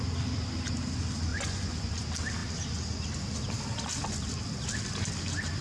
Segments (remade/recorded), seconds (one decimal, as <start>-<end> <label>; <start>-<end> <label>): 0.0-1.3 recorded; 1.3-1.9 remade; 1.9-5.6 recorded